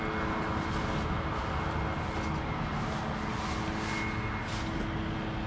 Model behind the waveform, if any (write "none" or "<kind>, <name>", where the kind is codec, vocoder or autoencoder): none